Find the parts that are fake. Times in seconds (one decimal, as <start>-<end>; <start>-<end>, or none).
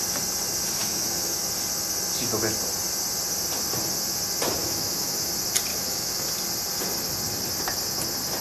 0.8-1.4; 4.6-5.3; 5.7-6.3